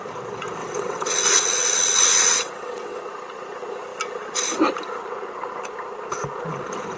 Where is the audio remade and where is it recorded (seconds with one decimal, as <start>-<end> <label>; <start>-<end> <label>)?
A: 0.0-0.6 recorded; 0.6-3.0 remade; 3.0-7.0 recorded